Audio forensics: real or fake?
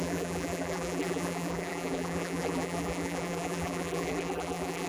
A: fake